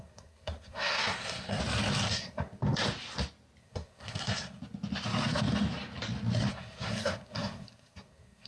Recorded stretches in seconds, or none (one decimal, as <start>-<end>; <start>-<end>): 1.6-2.1; 2.6-3.6; 4.6-6.5